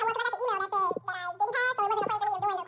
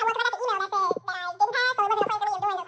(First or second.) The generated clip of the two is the second